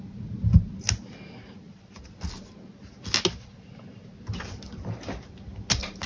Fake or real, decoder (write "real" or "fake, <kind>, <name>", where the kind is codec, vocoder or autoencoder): real